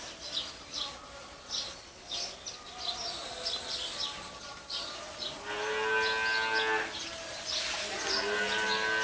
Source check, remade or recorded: recorded